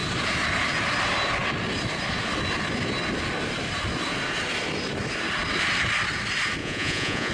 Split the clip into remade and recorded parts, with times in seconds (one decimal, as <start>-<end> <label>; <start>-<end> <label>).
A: 0.0-6.6 recorded; 6.6-7.3 remade

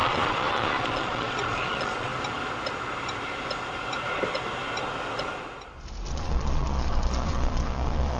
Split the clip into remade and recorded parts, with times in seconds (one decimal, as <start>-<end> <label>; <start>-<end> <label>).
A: 0.0-2.1 remade; 2.1-6.1 recorded; 6.1-8.2 remade

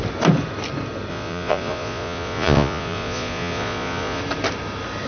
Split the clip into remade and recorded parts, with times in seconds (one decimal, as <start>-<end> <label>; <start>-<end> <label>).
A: 0.0-1.1 recorded; 1.1-4.2 remade; 4.2-5.1 recorded

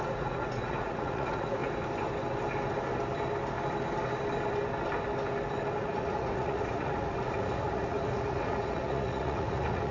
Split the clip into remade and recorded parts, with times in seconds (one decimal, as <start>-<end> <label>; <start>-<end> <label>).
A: 0.0-1.6 remade; 1.6-5.8 recorded; 5.8-9.9 remade

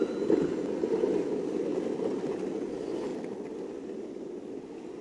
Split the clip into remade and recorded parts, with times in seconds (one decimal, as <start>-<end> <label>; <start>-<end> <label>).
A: 0.0-5.0 recorded

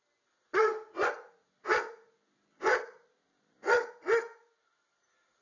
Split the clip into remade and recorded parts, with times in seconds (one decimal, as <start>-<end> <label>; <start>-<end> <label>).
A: 0.0-5.4 recorded

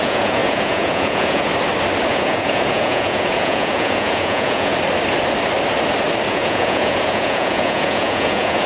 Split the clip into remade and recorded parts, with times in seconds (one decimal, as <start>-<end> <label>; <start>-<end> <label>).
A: 0.0-1.5 remade; 1.5-2.1 recorded; 2.1-4.7 remade; 4.7-6.3 recorded; 6.3-8.7 remade